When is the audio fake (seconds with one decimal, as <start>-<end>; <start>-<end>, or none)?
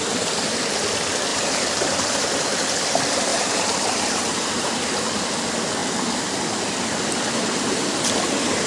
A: 1.3-2.4; 3.3-5.2